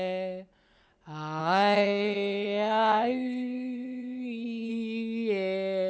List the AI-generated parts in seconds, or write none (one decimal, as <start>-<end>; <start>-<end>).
1.4-4.7